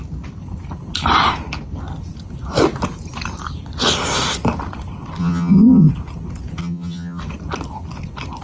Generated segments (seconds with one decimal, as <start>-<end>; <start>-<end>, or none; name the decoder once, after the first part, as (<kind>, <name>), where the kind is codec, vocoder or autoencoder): 5.2-5.9 (vocoder, HiFi-GAN); 6.6-7.2